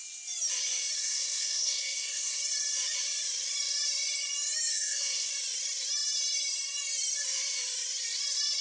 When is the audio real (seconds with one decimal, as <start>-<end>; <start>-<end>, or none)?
0.0-1.0; 2.4-4.7; 5.3-8.6